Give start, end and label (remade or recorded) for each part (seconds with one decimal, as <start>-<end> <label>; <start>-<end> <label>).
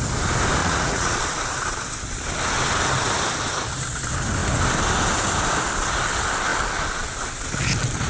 0.0-0.6 recorded; 0.6-1.2 remade; 1.2-8.1 recorded